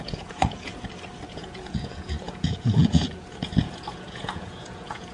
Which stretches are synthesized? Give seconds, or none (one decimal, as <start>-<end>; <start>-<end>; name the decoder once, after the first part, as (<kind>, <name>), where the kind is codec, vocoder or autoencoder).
0.0-0.7 (vocoder, Vocos); 1.3-5.1